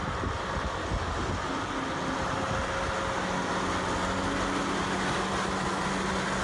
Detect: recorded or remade recorded